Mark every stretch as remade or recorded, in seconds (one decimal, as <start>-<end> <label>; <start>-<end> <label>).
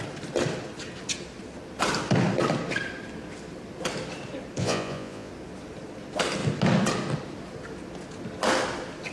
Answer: 0.0-4.6 recorded; 4.6-5.3 remade; 5.3-9.1 recorded